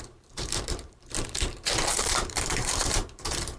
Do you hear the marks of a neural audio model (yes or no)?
yes